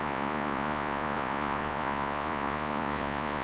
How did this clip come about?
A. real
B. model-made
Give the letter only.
B